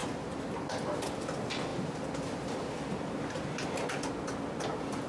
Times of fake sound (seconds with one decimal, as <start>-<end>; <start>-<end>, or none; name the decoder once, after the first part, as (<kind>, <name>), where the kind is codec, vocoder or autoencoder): 0.0-0.6 (vocoder, BigVGAN v2)